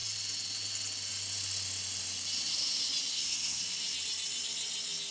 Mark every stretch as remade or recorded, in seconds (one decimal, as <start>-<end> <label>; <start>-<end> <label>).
0.0-3.1 recorded; 3.1-3.6 remade; 3.6-5.1 recorded